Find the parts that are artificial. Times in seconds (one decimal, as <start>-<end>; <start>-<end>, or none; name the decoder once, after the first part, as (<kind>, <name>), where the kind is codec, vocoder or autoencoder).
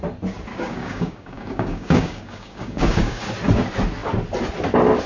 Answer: 0.5-3.2 (codec, DAC)